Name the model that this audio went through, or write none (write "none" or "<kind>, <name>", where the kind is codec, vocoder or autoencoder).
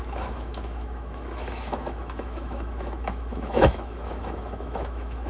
autoencoder, DAC-VAE